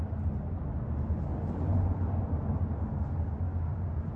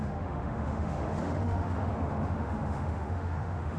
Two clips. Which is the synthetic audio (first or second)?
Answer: second